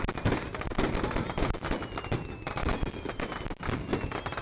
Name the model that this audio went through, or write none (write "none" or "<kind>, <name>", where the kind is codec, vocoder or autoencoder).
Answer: none